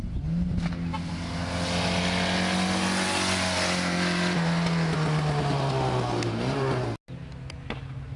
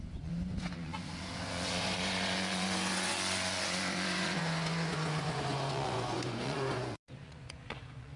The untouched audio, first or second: first